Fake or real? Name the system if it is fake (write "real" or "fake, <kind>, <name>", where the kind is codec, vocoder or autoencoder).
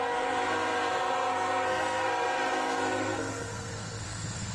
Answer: fake, codec, SNAC